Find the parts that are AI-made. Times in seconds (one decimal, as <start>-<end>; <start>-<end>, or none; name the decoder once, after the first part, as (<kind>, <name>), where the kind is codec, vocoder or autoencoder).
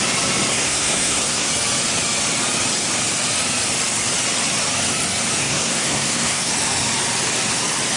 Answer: 0.5-1.5 (codec, SNAC); 5.4-6.5